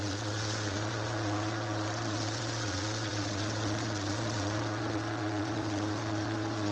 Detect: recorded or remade remade